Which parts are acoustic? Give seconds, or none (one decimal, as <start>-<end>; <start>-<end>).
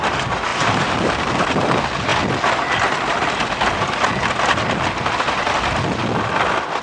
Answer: 0.0-0.5; 1.7-6.8